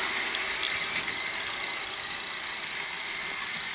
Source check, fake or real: real